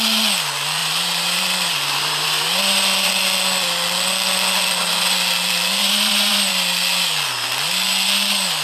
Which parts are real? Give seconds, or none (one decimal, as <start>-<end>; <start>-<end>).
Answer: 0.0-0.8; 3.1-5.8; 6.5-8.6